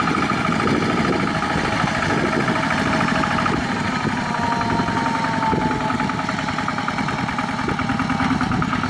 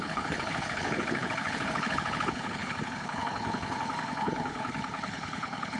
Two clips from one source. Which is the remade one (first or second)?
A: second